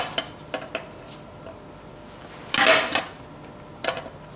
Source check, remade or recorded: recorded